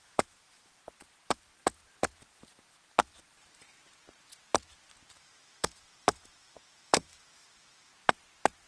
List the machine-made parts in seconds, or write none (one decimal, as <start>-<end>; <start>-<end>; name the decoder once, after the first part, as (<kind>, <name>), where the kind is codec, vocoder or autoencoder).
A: 0.0-0.7 (autoencoder, DAC-VAE); 5.2-7.9